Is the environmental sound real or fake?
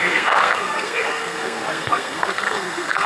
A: fake